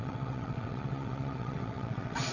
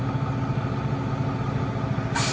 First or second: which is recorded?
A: second